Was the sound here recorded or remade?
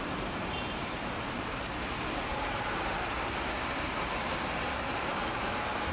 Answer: remade